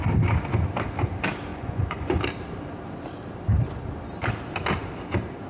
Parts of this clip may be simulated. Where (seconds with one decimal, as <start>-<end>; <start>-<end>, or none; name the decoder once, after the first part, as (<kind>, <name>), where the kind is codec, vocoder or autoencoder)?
1.5-2.2 (vocoder, Vocos)

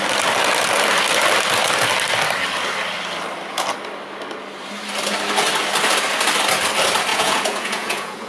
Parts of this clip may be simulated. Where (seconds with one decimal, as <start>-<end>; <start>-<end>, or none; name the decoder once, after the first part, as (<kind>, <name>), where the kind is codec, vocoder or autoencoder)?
7.1-8.3 (vocoder, Vocos)

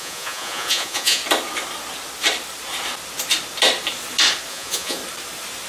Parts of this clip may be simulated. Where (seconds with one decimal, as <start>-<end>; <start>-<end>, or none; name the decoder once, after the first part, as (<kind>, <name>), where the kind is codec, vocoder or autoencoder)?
0.0-1.2 (vocoder, Vocos); 4.5-5.0

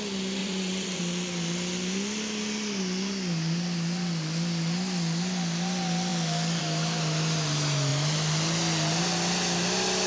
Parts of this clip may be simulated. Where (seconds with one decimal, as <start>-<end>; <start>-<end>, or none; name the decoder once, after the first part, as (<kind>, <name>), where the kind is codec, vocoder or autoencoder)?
0.4-1.0 (vocoder, Vocos)

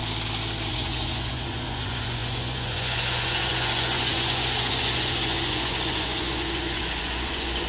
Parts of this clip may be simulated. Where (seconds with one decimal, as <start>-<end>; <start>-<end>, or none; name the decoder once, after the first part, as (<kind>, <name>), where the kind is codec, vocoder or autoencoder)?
0.7-7.7 (vocoder, Vocos)

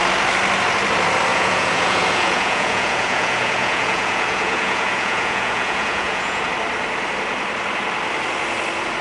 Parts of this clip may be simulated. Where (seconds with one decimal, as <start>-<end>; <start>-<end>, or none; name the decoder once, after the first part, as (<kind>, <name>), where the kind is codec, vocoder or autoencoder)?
1.3-6.5 (vocoder, Vocos)

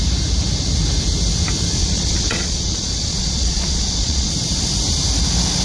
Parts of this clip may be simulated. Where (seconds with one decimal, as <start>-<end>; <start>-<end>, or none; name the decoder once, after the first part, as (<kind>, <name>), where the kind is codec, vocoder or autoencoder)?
1.8-4.3 (vocoder, Vocos)

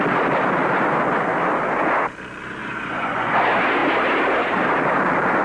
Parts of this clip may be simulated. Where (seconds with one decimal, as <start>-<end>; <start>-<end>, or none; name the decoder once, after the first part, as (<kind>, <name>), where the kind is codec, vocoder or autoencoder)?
2.6-3.3 (vocoder, Vocos)